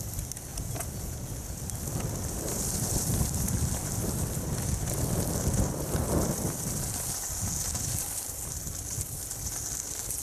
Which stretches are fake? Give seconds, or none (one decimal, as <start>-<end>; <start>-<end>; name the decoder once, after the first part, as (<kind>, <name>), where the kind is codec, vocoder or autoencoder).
0.5-1.6 (vocoder, Vocos)